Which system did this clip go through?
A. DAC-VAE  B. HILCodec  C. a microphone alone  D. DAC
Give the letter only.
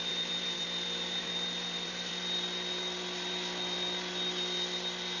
C